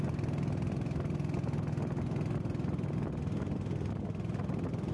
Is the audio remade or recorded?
recorded